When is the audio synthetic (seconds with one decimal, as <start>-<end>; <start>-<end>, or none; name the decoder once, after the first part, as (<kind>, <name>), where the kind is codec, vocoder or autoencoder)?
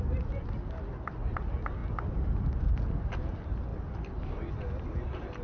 none